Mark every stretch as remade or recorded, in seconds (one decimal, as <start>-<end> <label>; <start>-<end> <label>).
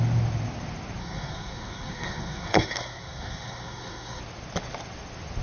0.0-1.0 recorded; 1.0-4.2 remade; 4.2-5.4 recorded